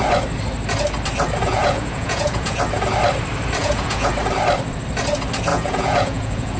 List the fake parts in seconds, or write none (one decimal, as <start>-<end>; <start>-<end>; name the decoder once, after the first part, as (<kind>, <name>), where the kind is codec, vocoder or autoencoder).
1.5-2.6 (vocoder, Vocos); 3.6-4.1; 5.5-6.6